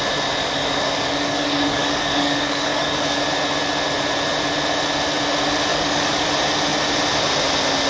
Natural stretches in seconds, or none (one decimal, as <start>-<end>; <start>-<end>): 0.0-0.4; 3.2-5.7; 6.3-7.9